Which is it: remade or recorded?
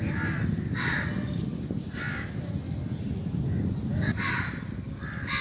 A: recorded